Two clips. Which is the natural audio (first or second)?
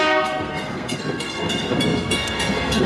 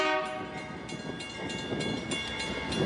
second